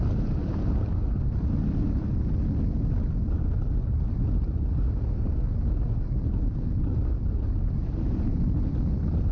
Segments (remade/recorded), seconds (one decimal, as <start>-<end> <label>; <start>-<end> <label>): 0.0-9.3 recorded